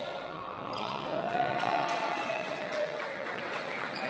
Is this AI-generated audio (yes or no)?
yes